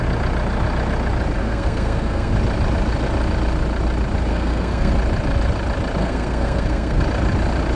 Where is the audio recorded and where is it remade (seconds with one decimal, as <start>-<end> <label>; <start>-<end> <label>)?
0.0-1.4 recorded; 1.4-2.3 remade; 2.3-4.3 recorded; 4.3-4.9 remade; 4.9-6.0 recorded; 6.0-7.0 remade; 7.0-7.8 recorded